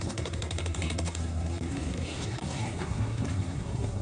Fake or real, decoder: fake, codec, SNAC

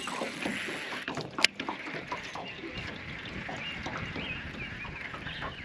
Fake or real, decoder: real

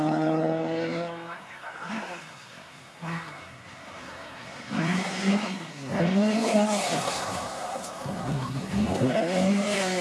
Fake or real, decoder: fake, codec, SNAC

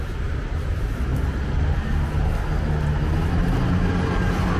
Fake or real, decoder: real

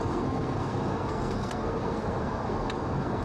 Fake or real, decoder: fake, codec, SNAC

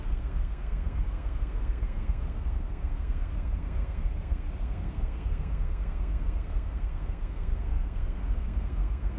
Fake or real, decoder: fake, codec, SNAC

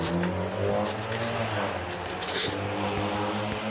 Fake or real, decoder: real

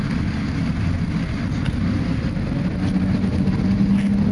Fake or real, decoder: real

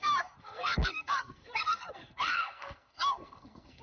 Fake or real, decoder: fake, codec, SNAC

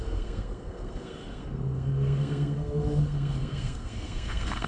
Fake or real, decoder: fake, codec, SNAC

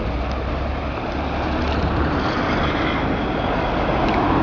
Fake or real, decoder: real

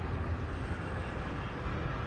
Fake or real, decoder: real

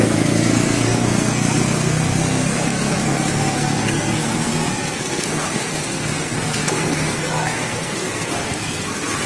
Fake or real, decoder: fake, codec, SNAC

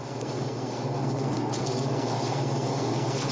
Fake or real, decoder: fake, codec, SNAC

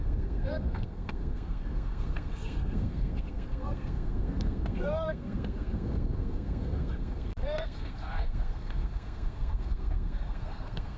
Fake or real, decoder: fake, codec, SNAC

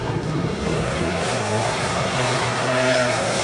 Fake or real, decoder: fake, codec, SNAC